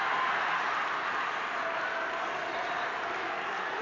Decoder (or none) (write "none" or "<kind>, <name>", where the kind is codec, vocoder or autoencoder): none